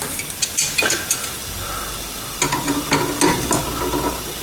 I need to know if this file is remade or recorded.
recorded